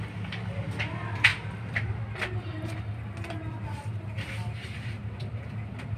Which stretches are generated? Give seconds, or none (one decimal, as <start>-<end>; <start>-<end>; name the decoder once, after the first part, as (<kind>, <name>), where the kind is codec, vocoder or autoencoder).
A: none